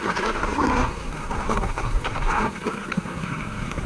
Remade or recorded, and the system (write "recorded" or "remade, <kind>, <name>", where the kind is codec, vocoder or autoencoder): remade, codec, SNAC